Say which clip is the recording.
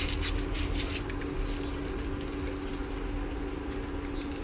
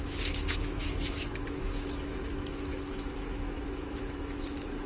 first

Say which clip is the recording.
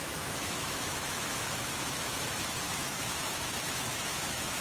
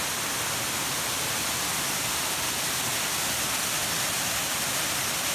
second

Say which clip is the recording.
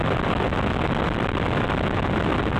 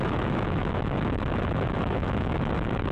first